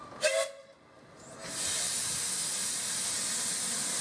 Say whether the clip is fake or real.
real